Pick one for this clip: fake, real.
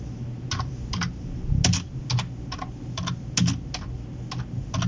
real